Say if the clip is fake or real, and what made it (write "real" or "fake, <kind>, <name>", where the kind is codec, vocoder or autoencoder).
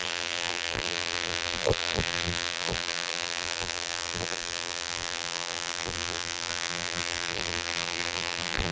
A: fake, vocoder, BigVGAN v2